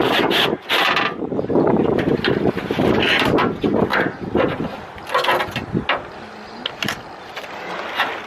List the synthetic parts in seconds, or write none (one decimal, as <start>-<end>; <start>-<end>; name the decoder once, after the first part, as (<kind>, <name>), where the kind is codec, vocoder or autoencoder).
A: none